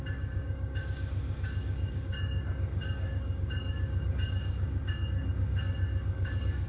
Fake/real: fake